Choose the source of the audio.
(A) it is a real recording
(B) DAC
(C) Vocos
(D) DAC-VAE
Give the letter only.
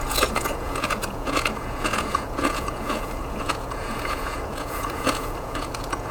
C